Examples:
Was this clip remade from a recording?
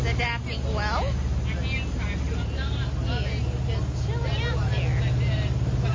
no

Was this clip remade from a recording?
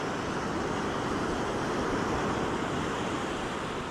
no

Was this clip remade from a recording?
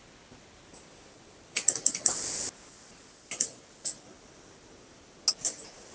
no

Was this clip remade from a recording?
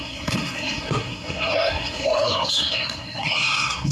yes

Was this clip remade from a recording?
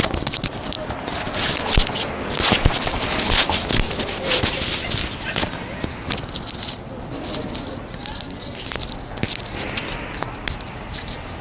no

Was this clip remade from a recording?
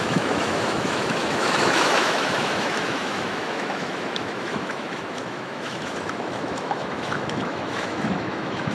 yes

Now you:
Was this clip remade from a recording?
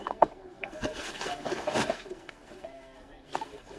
yes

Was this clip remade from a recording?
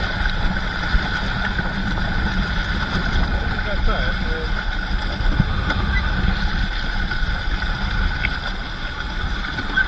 no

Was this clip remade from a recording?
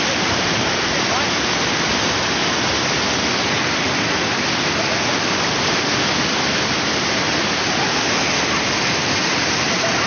no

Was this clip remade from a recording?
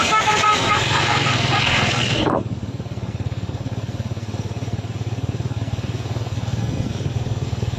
yes